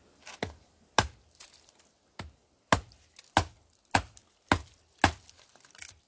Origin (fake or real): real